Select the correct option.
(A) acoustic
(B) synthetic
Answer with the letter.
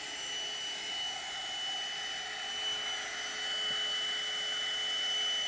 A